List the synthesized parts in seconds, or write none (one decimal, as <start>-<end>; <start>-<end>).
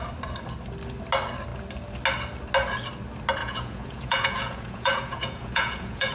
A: 3.4-6.1